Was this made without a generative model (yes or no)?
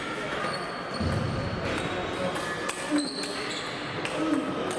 yes